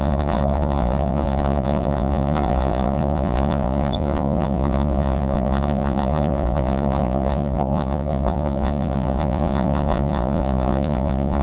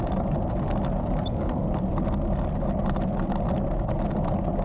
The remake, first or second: first